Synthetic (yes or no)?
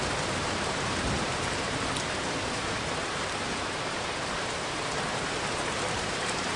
yes